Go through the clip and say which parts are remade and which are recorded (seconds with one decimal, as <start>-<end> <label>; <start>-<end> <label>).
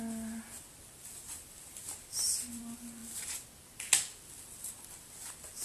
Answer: 0.0-5.6 recorded